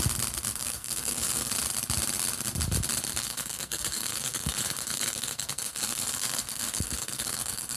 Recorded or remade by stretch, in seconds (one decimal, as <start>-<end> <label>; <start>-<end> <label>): 0.0-0.5 recorded; 0.5-1.5 remade; 1.5-3.2 recorded; 3.2-7.8 remade